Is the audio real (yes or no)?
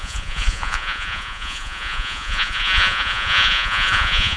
no